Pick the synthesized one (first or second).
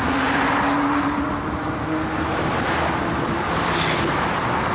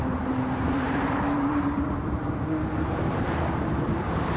second